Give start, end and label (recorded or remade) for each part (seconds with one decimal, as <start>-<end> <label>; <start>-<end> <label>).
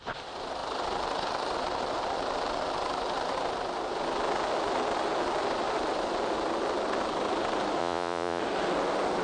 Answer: 0.0-7.8 recorded; 7.8-8.4 remade; 8.4-9.2 recorded